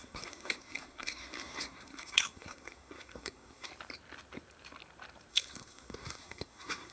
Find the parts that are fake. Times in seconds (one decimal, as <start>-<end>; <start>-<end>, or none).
0.0-3.7; 5.3-6.9